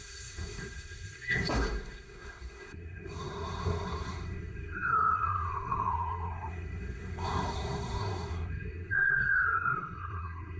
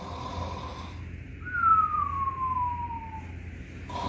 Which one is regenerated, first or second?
first